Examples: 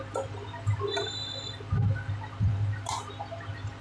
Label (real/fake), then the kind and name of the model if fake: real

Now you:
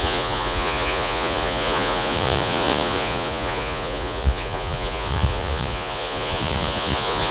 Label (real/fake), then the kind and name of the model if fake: fake, vocoder, Vocos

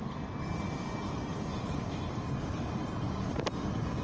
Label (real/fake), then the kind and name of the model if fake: real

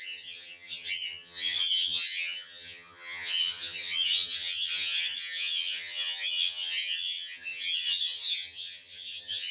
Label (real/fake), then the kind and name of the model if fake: fake, vocoder, HiFi-GAN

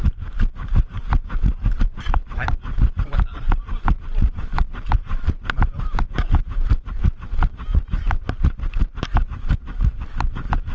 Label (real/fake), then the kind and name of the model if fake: fake, vocoder, BigVGAN v2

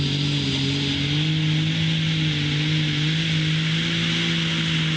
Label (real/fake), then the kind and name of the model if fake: real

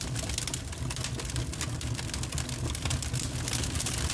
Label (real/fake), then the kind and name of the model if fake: real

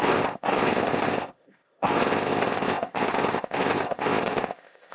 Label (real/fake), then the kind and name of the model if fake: fake, codec, ZipCodec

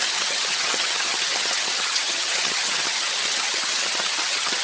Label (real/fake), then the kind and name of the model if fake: fake, vocoder, HiFi-GAN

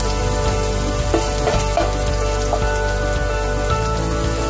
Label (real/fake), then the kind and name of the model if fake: real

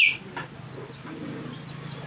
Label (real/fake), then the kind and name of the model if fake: real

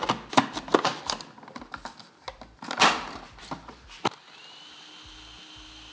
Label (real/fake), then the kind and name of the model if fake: real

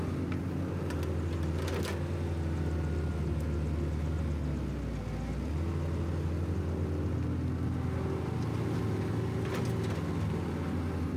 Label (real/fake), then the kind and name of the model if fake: real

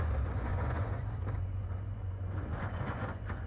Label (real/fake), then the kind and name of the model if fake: fake, vocoder, Vocos